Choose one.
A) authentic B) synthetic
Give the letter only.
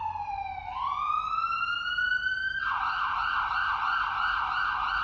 A